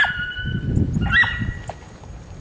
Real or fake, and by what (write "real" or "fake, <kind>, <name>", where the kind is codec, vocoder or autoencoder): real